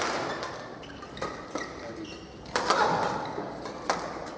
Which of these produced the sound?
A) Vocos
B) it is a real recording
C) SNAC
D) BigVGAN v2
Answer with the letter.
B